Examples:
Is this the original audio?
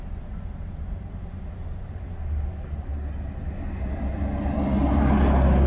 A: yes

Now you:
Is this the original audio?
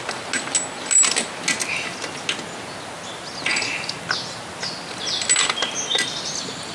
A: yes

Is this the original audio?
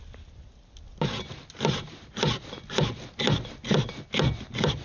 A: yes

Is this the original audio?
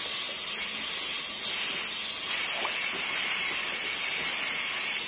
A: yes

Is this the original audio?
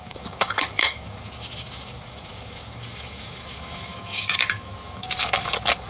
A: no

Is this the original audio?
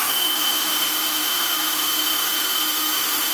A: no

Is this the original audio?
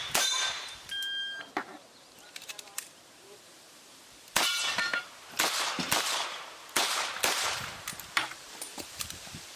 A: no